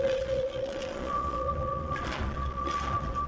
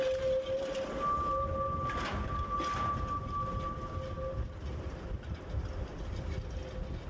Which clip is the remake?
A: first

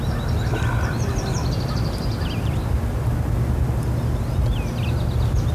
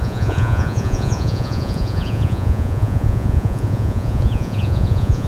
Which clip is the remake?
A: second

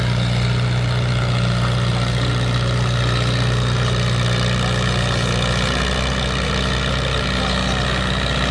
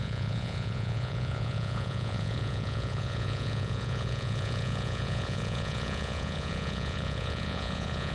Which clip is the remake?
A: second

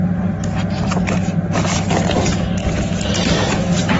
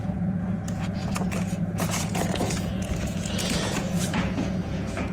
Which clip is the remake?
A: second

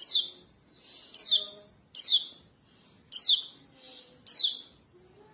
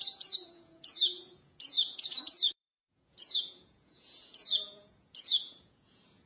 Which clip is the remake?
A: second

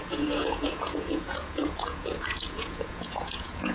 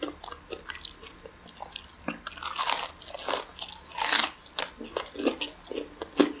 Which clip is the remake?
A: first